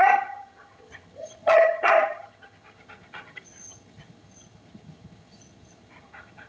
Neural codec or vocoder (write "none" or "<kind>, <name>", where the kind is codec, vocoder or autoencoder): vocoder, HiFi-GAN